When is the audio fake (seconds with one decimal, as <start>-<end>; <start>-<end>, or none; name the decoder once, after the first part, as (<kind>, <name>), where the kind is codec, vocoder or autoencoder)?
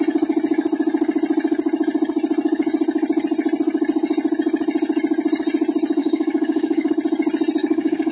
6.0-6.9 (codec, DAC); 7.6-8.1